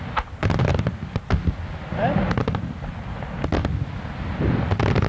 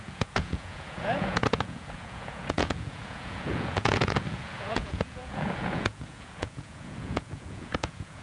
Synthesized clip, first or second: second